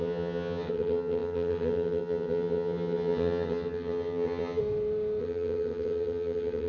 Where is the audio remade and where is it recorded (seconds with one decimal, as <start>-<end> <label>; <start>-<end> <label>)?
0.0-4.6 remade; 4.6-5.2 recorded; 5.2-6.7 remade